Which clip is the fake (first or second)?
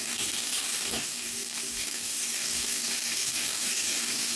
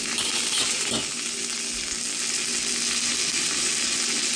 first